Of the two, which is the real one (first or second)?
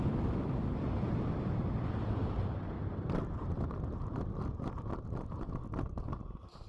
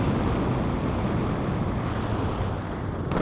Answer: second